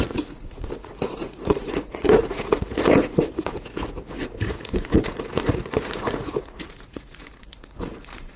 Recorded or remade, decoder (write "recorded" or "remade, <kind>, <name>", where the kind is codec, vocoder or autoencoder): remade, vocoder, Vocos